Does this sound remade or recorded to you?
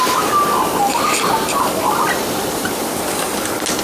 recorded